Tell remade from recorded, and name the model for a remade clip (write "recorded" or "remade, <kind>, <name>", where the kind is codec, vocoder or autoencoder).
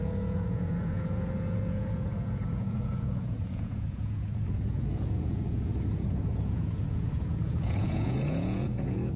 remade, vocoder, Vocos